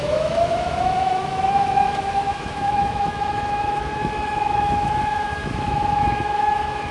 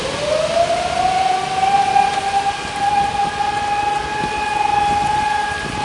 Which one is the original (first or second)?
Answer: second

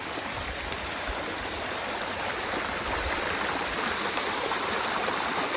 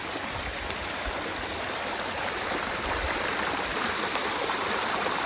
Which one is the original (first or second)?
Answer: first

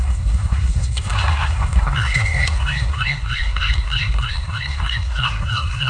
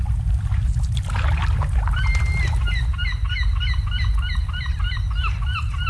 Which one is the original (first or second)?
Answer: second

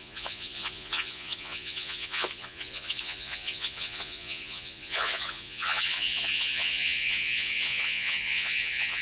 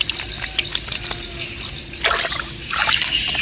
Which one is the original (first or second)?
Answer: second